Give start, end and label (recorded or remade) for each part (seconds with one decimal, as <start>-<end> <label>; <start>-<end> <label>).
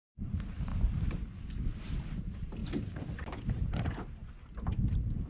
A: 0.0-0.7 remade; 0.7-2.2 recorded; 2.2-2.6 remade; 2.6-3.4 recorded; 3.4-4.2 remade; 4.2-4.8 recorded; 4.8-5.3 remade